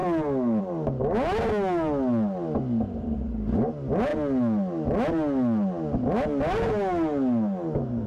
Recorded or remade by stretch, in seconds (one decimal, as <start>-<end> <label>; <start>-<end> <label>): 0.0-8.1 recorded